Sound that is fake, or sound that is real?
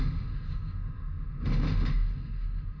fake